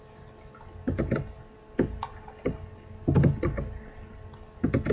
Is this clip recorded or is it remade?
recorded